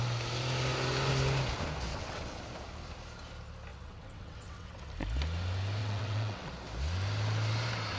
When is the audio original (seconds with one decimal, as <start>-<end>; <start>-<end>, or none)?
0.0-1.9; 2.4-3.7; 4.9-5.8; 6.5-8.0